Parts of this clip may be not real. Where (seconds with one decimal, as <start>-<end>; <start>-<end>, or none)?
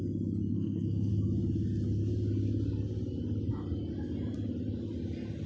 0.5-1.1